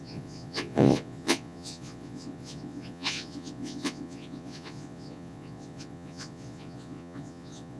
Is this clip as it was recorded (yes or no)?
no